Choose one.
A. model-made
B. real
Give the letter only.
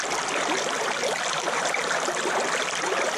B